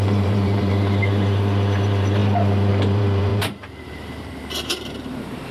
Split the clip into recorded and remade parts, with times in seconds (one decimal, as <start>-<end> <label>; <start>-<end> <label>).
0.0-5.5 remade